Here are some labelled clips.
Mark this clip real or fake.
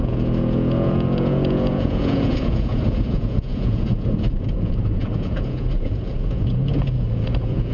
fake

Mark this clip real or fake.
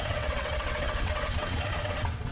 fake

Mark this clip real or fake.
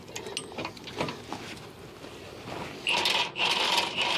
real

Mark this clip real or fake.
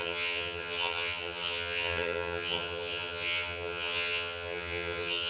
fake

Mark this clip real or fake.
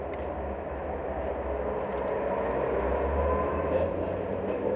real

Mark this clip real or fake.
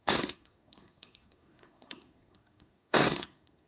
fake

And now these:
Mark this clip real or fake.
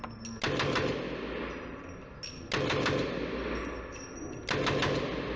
real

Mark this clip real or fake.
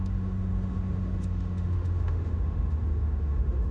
fake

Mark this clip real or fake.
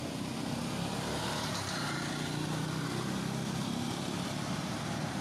real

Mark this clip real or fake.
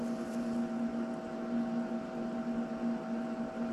real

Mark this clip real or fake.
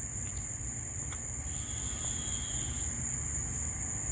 real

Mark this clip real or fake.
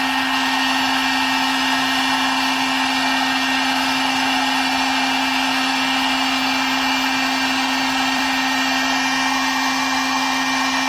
fake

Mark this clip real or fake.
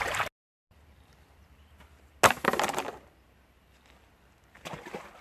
real